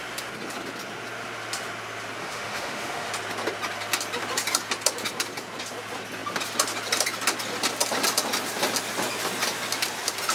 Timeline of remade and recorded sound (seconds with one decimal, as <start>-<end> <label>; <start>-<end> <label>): 0.0-2.2 recorded; 2.2-3.1 remade; 3.1-10.3 recorded